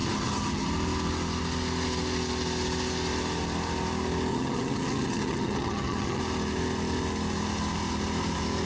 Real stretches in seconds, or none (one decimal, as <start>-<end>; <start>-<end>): 0.7-4.3; 6.2-8.6